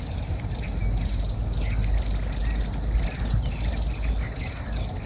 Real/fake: real